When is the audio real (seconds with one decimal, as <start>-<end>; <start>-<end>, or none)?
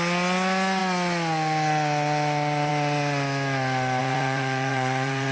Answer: 0.0-4.0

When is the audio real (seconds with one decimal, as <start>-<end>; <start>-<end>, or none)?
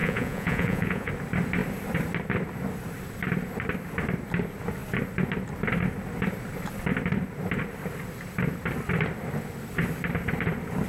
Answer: 1.1-10.9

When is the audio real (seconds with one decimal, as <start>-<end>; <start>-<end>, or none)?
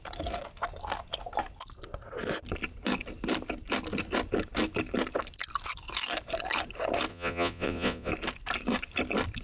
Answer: 0.0-7.1; 8.1-9.4